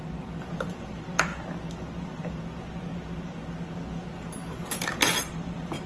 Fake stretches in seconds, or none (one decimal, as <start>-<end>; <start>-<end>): 0.0-1.3; 4.8-5.9